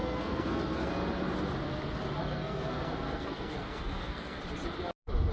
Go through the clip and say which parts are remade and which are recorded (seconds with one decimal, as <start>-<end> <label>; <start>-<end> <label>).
0.0-0.9 remade; 0.9-2.2 recorded; 2.2-4.4 remade; 4.4-5.3 recorded